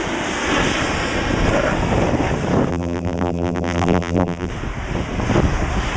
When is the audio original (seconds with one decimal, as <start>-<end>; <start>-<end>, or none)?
0.0-2.7; 4.5-6.0